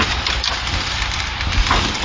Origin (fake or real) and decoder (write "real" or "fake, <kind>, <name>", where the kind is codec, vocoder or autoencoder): real